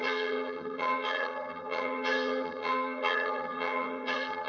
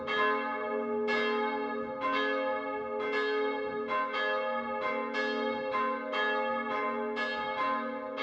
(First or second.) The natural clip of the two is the second